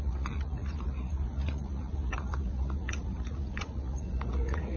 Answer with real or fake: fake